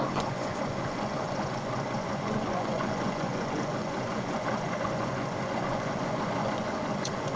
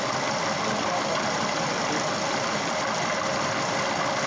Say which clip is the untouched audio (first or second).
second